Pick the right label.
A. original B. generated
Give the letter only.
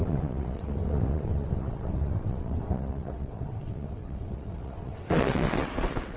B